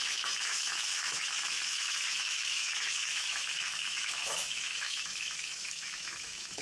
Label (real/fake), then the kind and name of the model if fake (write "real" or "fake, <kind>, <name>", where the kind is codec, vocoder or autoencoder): fake, autoencoder, DAC-VAE